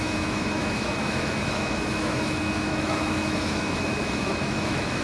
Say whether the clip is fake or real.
fake